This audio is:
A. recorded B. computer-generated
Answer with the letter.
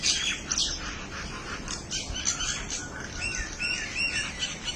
A